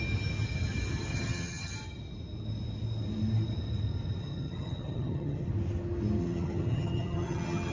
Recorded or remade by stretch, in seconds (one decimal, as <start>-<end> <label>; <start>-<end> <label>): 0.0-1.1 recorded; 1.1-1.7 remade; 1.7-4.2 recorded; 4.2-5.5 remade; 5.5-6.2 recorded; 6.2-7.7 remade

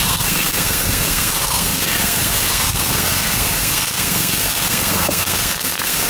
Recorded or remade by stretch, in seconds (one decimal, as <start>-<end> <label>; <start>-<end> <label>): 0.0-6.1 remade